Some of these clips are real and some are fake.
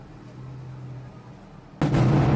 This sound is real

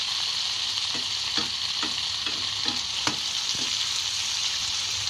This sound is real